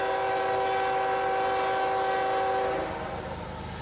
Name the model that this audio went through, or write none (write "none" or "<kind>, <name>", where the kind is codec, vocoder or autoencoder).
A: none